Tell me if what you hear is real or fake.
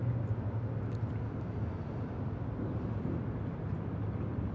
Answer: real